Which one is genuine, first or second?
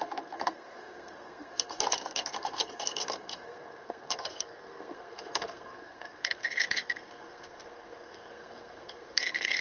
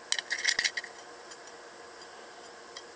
second